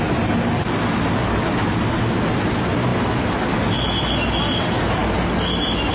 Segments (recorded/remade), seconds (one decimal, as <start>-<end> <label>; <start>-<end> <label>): 0.0-5.9 recorded